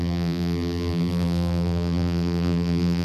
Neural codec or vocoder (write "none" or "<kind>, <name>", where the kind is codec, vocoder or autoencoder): vocoder, BigVGAN v2